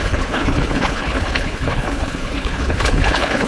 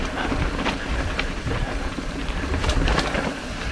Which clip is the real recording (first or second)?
second